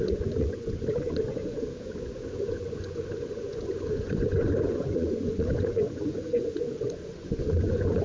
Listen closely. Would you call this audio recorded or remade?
remade